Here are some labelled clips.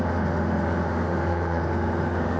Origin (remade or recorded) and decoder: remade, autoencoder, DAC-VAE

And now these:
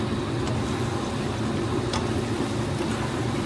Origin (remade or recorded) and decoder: recorded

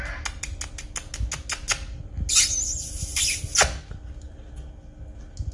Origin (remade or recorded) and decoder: recorded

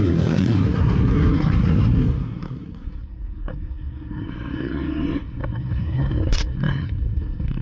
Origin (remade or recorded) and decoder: remade, codec, SNAC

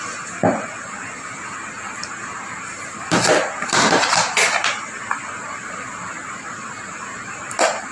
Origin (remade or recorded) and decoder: recorded